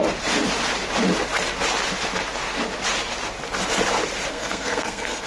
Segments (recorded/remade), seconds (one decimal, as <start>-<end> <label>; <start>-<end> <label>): 0.0-4.3 recorded; 4.3-5.3 remade

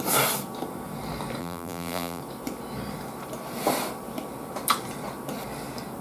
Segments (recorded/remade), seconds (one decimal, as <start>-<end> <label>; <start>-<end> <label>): 0.0-1.4 recorded; 1.4-2.2 remade; 2.2-6.0 recorded